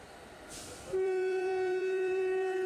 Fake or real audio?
fake